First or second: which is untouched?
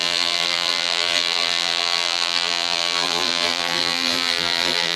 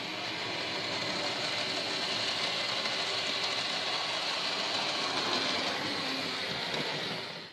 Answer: second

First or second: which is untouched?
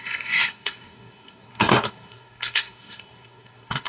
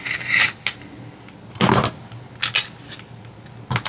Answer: second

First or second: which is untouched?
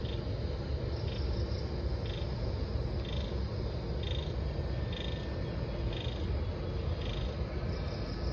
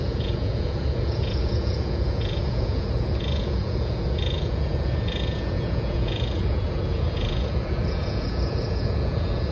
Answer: first